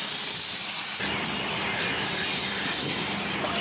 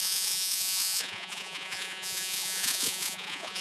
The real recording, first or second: first